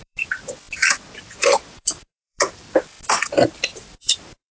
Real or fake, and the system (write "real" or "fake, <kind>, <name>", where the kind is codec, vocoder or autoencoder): fake, vocoder, BigVGAN v2